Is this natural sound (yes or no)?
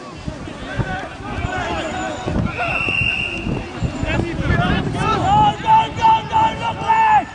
yes